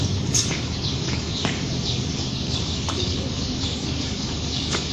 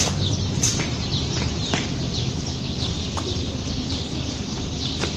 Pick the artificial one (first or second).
first